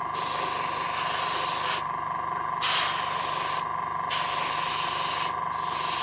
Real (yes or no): yes